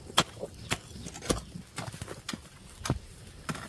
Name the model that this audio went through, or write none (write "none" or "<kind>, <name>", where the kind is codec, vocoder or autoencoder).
none